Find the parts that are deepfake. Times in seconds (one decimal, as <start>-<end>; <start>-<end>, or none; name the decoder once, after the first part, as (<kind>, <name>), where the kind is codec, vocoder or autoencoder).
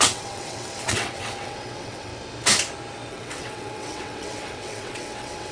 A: 0.0-2.1 (vocoder, WaveNeXt); 3.1-5.5